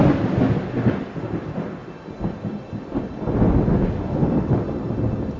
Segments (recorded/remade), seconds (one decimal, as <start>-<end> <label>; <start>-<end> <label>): 0.0-5.4 recorded